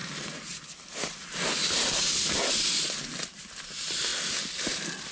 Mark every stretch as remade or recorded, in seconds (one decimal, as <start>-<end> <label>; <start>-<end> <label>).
0.0-5.1 recorded